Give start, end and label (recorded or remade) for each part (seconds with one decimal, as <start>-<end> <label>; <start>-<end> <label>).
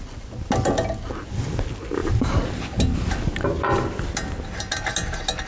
0.0-5.5 recorded